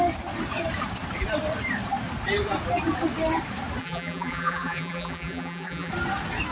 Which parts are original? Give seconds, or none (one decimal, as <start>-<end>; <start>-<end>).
0.0-3.8; 5.9-6.5